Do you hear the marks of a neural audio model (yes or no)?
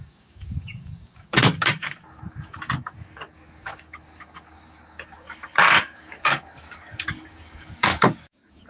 yes